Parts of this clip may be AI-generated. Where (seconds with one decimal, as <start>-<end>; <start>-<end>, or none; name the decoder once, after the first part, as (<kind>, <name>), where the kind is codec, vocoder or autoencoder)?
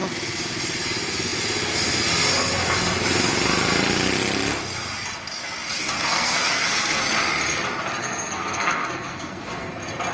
5.7-7.0 (codec, SNAC); 8.0-9.7